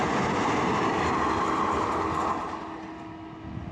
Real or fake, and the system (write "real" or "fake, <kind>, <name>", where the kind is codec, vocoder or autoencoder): real